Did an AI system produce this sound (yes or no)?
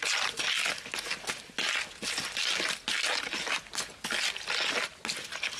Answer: no